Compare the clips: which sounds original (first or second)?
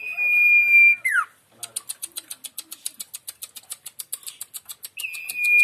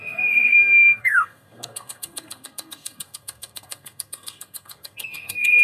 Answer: first